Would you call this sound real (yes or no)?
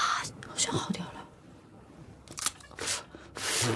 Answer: yes